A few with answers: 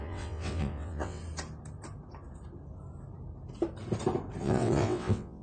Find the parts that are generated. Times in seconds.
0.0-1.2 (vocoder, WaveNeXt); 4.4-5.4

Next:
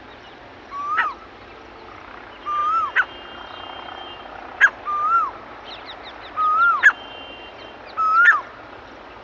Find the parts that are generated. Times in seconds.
none

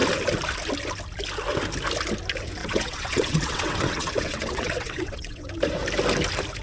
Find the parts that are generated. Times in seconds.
2.6-5.5 (vocoder, WaveNeXt)

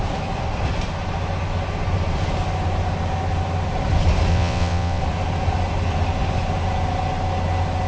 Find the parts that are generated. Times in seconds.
4.3-5.0 (vocoder, WaveNeXt)

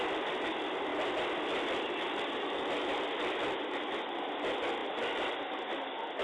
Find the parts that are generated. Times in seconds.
none

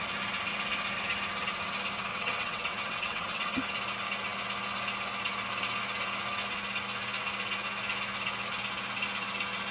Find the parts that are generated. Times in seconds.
2.1-3.6 (vocoder, WaveNeXt)

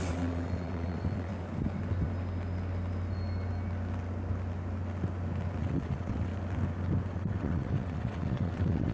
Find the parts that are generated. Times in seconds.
0.0-1.3 (vocoder, WaveNeXt); 5.6-6.3; 7.1-8.9

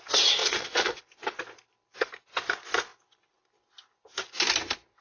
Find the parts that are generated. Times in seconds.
0.4-1.0 (vocoder, WaveNeXt)